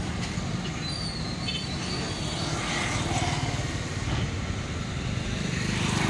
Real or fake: real